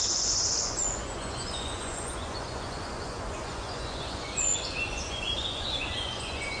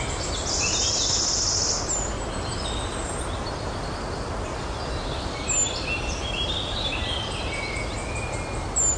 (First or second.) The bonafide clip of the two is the second